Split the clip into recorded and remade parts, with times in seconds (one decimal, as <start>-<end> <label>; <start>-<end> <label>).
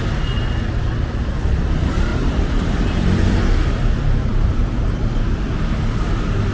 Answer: 0.0-2.1 recorded; 2.1-2.7 remade; 2.7-4.3 recorded; 4.3-5.1 remade; 5.1-6.5 recorded